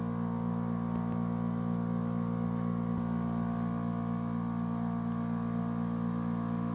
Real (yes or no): yes